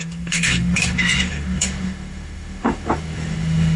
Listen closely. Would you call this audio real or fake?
fake